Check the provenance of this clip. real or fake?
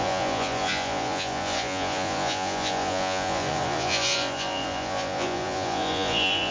fake